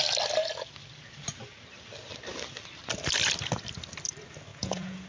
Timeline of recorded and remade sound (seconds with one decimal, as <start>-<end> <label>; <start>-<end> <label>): 0.0-4.5 recorded; 4.5-5.1 remade